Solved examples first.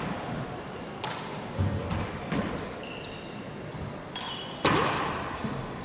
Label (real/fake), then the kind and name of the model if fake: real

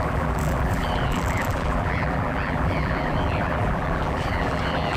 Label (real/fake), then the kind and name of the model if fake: fake, vocoder, BigVGAN v2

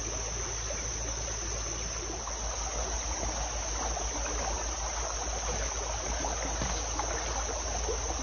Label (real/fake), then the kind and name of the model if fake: real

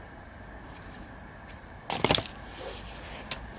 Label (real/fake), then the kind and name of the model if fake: real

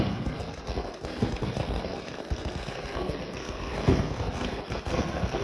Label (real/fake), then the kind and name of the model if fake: fake, codec, SNAC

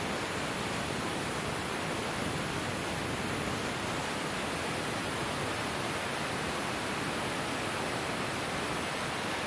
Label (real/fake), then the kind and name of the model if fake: real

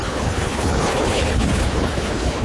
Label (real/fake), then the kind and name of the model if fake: fake, codec, HILCodec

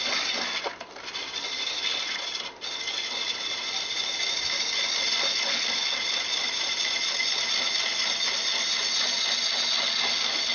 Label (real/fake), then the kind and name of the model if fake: real